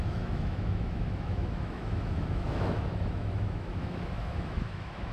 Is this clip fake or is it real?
fake